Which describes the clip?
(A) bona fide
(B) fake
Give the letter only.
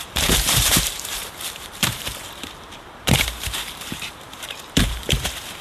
B